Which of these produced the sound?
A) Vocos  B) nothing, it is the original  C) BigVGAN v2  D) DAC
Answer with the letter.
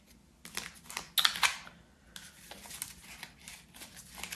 B